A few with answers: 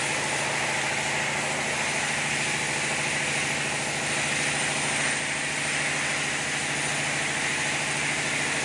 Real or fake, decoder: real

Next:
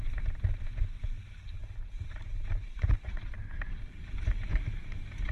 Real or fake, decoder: real